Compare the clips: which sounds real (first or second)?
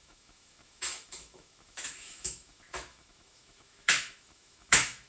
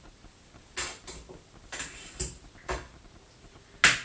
second